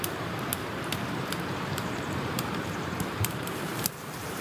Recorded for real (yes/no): no